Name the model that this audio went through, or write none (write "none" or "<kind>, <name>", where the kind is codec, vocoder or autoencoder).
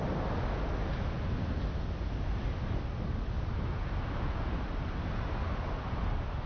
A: none